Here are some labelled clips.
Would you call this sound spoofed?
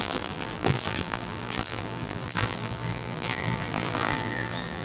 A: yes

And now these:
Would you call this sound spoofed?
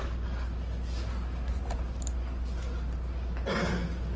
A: no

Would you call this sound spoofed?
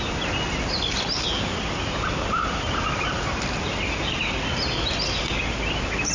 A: no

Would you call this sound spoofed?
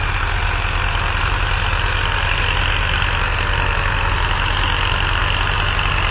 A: no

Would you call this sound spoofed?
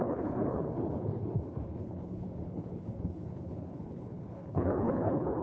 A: yes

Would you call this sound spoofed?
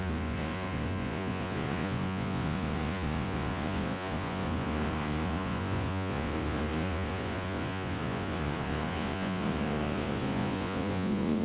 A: yes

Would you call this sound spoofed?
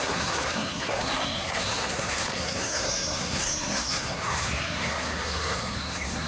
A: yes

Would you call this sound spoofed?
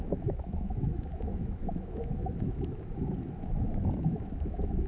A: yes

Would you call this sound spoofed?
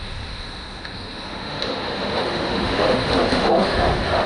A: yes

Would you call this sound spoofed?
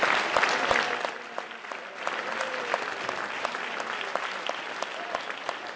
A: no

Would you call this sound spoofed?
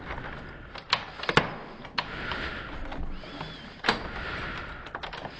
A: no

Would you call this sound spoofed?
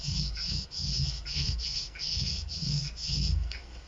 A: yes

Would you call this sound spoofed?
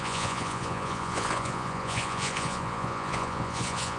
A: yes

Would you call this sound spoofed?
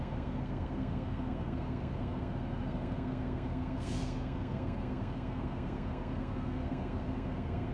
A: yes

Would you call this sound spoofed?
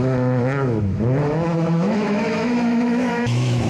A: yes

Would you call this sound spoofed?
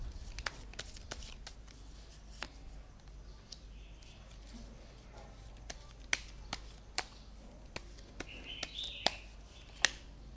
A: no